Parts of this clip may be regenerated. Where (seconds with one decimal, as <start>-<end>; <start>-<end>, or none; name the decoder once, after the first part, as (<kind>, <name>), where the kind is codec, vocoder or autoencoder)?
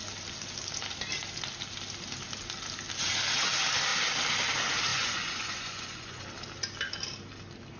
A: 4.9-6.2 (vocoder, Vocos)